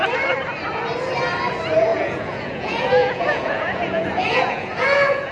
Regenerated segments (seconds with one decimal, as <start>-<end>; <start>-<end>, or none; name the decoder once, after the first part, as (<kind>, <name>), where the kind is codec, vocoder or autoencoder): 1.9-5.3 (vocoder, Vocos)